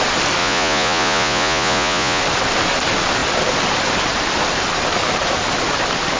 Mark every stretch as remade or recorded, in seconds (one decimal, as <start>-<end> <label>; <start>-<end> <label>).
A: 0.0-0.4 recorded; 0.4-2.2 remade; 2.2-6.2 recorded